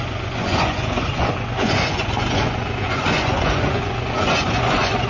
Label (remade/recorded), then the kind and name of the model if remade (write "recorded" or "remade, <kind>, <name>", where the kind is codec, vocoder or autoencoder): remade, vocoder, Vocos